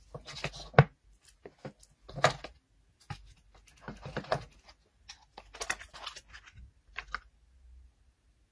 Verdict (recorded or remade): recorded